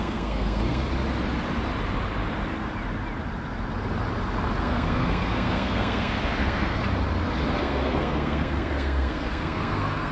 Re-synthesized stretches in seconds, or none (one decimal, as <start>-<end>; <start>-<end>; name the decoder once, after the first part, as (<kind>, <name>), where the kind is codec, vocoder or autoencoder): 0.0-0.9 (codec, SNAC); 4.6-6.8; 7.6-10.1